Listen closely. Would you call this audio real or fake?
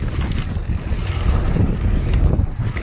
fake